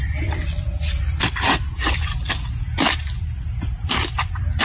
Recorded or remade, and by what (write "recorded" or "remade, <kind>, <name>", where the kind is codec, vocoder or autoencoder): recorded